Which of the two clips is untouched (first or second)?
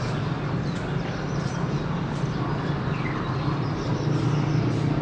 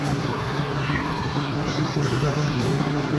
first